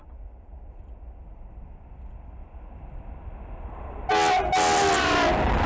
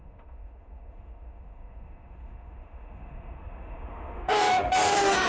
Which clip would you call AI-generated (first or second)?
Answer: second